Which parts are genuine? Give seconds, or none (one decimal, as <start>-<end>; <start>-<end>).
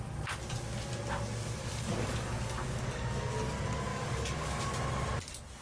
0.0-1.6; 3.3-3.9; 4.7-5.6